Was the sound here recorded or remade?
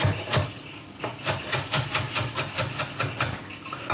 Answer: recorded